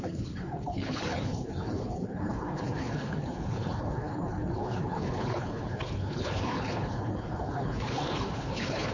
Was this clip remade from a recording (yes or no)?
yes